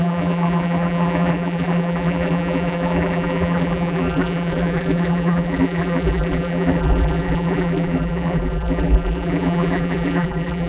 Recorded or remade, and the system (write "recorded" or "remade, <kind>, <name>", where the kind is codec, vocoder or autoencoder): remade, vocoder, BigVGAN v2